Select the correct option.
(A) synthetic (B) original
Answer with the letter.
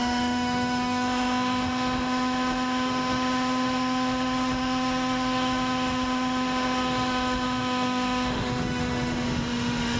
A